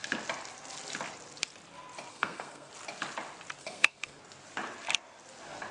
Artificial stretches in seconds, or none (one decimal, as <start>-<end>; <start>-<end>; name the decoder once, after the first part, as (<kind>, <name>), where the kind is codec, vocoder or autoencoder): 2.1-2.7 (codec, SNAC); 3.6-4.2